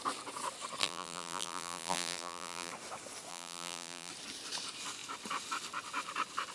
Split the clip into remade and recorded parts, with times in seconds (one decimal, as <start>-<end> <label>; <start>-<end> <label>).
0.0-0.8 recorded; 0.8-2.7 remade; 2.7-3.3 recorded; 3.3-4.1 remade; 4.1-6.5 recorded